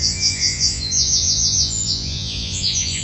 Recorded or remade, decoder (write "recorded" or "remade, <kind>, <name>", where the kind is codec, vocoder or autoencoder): remade, vocoder, Vocos